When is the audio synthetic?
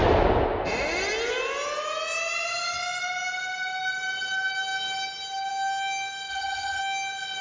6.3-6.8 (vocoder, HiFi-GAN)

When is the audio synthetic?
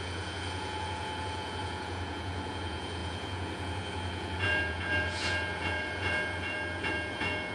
0.0-7.5 (vocoder, Vocos)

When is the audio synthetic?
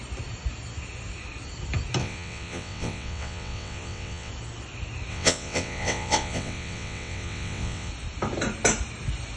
2.0-4.3 (vocoder, WaveNeXt); 5.1-7.9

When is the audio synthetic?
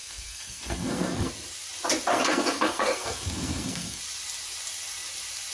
0.0-1.3 (codec, SNAC); 2.1-4.0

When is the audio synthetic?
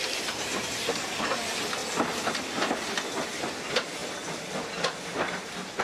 none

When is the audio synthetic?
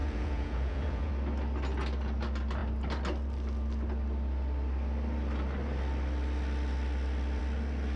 0.0-1.1 (vocoder, Vocos)